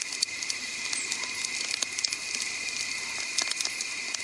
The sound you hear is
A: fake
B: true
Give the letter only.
B